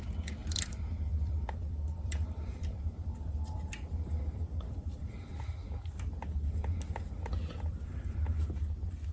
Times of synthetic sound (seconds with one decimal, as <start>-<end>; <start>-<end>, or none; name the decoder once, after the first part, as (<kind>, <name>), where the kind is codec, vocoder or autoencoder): 0.4-5.3 (vocoder, BigVGAN v2); 7.9-8.4